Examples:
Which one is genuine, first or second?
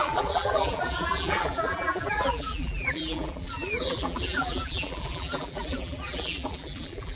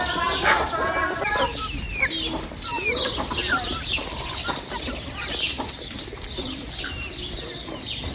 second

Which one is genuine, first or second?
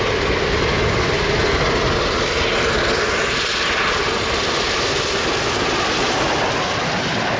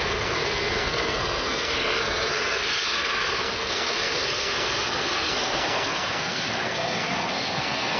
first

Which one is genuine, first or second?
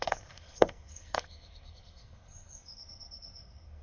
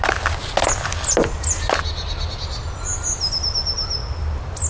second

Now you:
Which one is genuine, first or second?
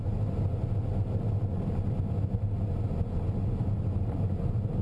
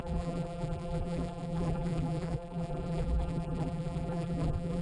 first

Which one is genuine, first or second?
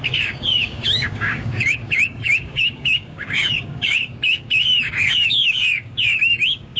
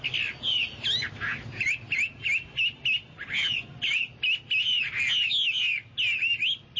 second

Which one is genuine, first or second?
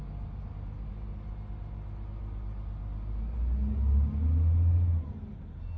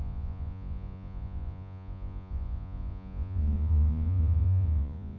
first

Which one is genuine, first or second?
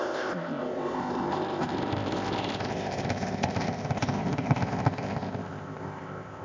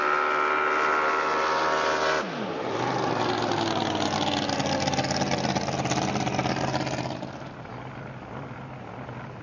second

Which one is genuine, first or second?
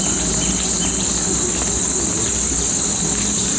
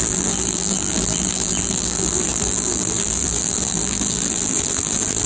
first